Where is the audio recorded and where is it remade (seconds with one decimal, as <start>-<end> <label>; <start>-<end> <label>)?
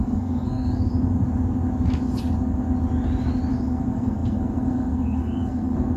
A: 0.0-0.9 remade; 0.9-3.5 recorded; 3.5-6.0 remade